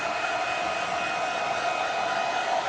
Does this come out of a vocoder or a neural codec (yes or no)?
no